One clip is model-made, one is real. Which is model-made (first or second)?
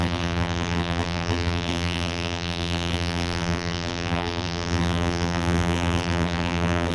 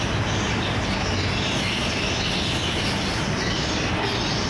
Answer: first